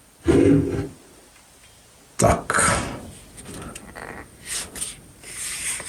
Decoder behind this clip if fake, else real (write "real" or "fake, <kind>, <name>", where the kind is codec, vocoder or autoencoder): real